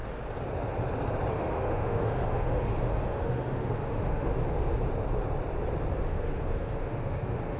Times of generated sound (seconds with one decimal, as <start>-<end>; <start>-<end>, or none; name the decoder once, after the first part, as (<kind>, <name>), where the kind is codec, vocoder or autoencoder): 1.3-4.3 (autoencoder, DAC-VAE); 6.1-7.6